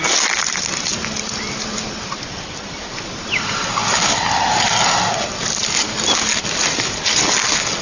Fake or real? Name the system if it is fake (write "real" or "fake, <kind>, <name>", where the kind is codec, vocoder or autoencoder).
real